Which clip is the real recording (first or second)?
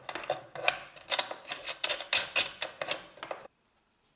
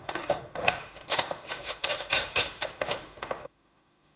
first